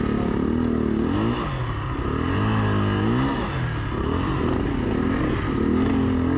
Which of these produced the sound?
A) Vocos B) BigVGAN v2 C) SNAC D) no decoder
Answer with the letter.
D